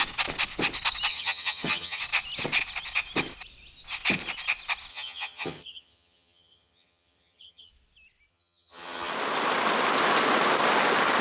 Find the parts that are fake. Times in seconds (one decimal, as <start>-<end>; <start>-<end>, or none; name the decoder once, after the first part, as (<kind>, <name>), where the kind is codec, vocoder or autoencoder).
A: 1.1-2.0 (vocoder, HiFi-GAN); 4.9-7.7; 8.3-9.1